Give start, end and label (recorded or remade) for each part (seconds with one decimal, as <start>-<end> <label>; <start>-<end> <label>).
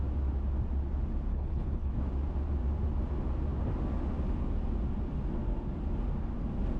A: 0.0-1.3 recorded; 1.3-1.9 remade; 1.9-6.8 recorded